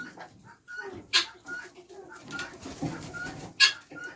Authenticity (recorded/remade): recorded